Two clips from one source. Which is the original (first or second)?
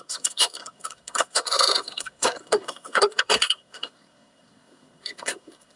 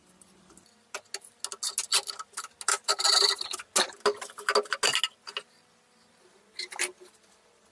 second